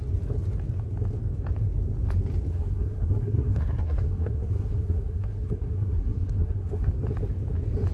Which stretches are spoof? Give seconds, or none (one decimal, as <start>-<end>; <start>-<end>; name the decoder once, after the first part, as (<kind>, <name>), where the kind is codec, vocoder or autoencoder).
2.5-6.9 (codec, SNAC)